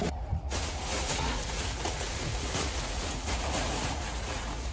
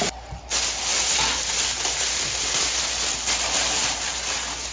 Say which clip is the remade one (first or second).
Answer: first